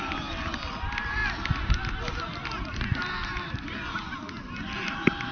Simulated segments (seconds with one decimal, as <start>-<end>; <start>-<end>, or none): none